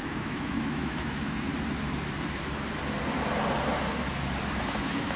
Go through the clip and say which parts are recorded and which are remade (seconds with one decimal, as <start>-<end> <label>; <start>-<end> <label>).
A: 0.0-1.5 remade; 1.5-4.6 recorded; 4.6-5.2 remade